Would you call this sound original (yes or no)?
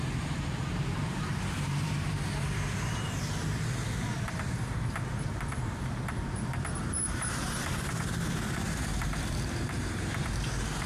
no